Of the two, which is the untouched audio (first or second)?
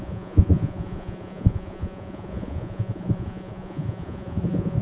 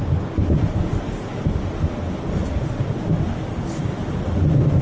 second